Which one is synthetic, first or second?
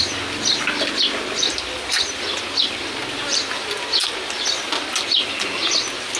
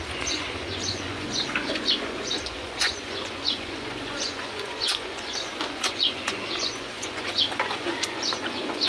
second